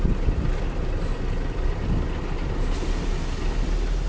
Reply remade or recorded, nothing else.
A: recorded